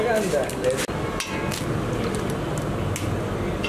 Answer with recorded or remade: recorded